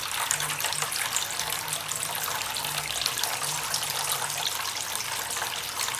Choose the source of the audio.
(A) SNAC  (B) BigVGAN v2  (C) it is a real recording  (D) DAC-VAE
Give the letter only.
C